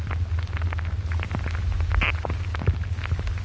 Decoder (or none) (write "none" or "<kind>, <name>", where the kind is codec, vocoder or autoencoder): none